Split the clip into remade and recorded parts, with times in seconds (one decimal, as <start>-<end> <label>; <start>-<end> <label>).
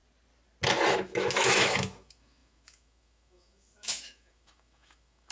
0.0-0.9 recorded; 0.9-5.3 remade